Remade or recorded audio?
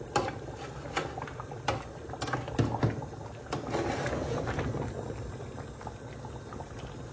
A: recorded